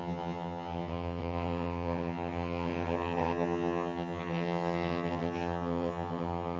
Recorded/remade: remade